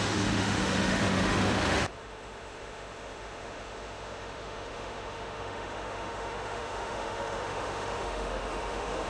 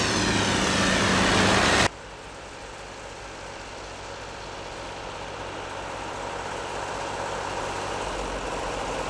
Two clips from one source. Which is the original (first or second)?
second